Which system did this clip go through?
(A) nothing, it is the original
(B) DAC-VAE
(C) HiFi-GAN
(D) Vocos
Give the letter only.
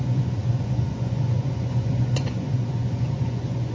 D